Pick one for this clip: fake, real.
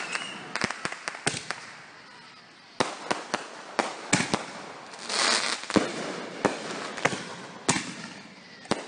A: real